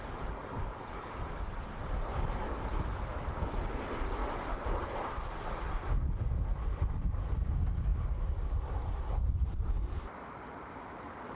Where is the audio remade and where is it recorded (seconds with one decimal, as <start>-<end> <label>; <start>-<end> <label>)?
0.0-11.3 recorded